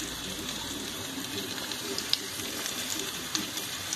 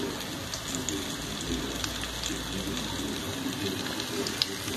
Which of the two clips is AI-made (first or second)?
first